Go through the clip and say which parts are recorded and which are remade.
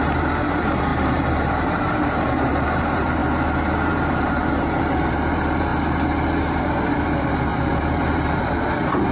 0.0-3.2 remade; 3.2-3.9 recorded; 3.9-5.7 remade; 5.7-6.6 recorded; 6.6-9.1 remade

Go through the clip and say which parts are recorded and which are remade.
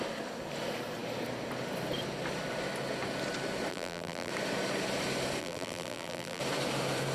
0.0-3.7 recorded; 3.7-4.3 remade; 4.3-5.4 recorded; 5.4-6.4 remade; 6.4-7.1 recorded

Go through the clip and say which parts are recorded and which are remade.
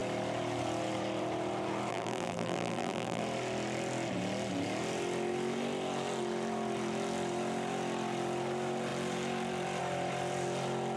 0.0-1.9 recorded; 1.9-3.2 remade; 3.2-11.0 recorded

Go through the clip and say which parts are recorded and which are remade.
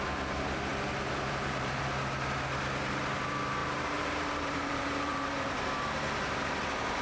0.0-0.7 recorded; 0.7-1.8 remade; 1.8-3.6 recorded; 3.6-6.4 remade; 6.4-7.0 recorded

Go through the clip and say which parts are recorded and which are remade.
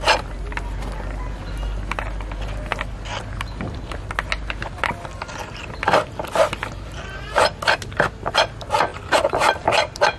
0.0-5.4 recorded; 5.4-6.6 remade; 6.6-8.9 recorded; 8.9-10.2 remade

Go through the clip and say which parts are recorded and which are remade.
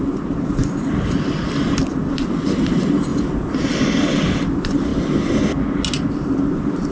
0.0-3.1 remade; 3.1-3.7 recorded; 3.7-4.9 remade; 4.9-6.9 recorded